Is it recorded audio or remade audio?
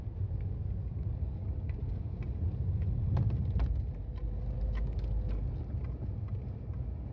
recorded